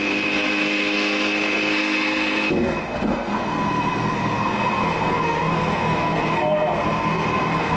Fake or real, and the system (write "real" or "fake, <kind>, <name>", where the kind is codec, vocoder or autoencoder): fake, codec, SNAC